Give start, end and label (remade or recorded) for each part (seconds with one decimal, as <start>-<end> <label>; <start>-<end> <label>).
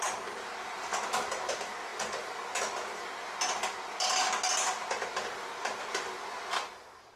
0.0-7.2 recorded